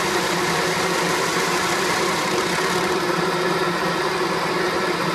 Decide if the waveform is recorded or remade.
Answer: recorded